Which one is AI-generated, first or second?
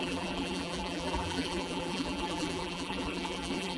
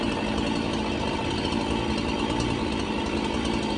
first